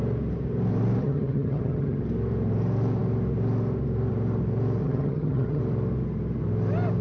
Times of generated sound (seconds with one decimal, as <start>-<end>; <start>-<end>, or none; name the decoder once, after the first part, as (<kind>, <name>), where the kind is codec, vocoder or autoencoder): 1.0-2.0 (vocoder, HiFi-GAN); 4.8-5.6